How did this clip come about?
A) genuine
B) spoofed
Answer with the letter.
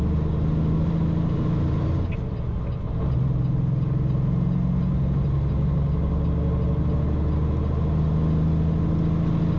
A